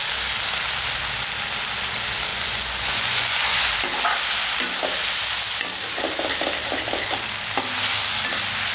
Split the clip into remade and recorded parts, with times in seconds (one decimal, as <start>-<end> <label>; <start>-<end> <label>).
0.0-2.3 recorded; 2.3-3.7 remade; 3.7-8.7 recorded